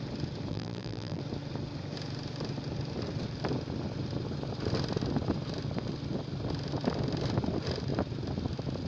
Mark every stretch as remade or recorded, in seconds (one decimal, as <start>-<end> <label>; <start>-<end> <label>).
0.0-0.5 recorded; 0.5-1.2 remade; 1.2-8.9 recorded